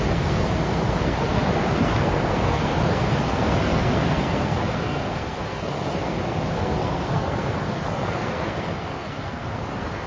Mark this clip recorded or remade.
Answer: remade